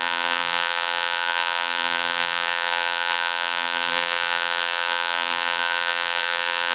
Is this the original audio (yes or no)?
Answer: no